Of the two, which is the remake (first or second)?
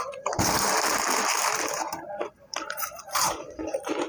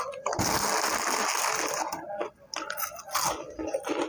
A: first